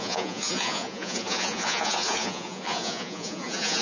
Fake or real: fake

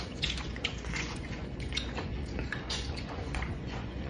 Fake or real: fake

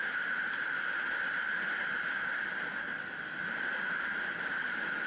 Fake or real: real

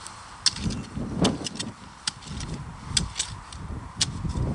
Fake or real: real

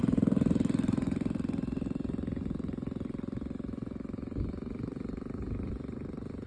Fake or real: real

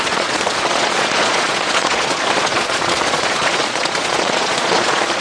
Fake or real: fake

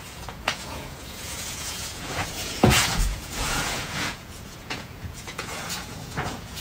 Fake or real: fake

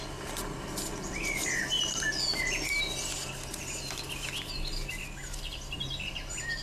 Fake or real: real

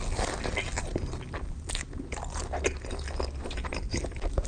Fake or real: real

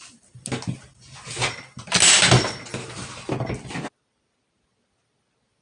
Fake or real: real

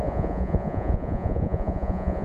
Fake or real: fake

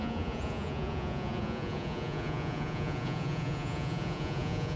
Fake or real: fake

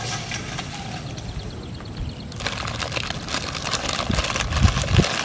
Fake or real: real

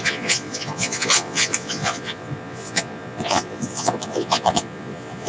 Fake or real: fake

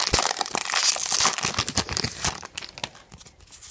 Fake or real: real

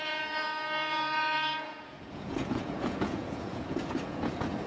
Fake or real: fake